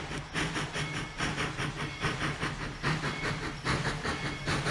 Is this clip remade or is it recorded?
recorded